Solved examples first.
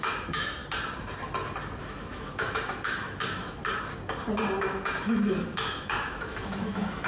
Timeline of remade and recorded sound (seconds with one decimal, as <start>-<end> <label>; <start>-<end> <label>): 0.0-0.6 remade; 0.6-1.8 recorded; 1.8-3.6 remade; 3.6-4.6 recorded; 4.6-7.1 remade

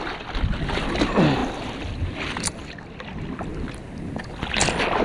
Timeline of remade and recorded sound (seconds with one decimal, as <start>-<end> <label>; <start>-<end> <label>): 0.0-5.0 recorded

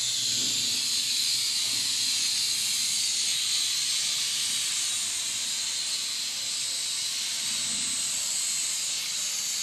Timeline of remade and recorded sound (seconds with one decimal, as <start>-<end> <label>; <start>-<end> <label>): 0.0-9.6 recorded